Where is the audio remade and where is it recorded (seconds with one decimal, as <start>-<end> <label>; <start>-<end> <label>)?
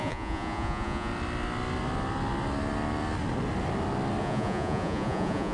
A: 0.0-1.1 remade; 1.1-4.2 recorded; 4.2-5.5 remade